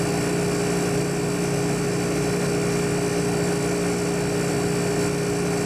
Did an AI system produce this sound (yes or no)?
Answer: no